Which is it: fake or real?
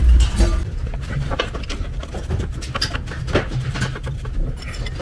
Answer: real